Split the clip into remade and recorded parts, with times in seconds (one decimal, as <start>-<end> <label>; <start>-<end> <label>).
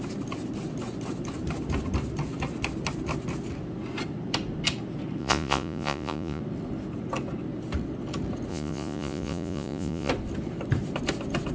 0.0-5.2 recorded; 5.2-6.4 remade; 6.4-8.5 recorded; 8.5-10.1 remade; 10.1-11.5 recorded